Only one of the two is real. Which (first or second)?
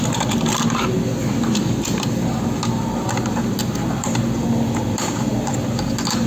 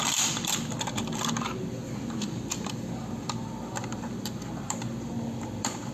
first